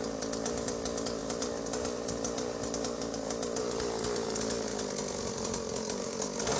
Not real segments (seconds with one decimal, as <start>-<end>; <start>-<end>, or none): none